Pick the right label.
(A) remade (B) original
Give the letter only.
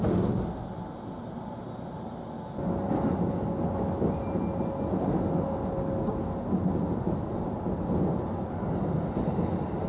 B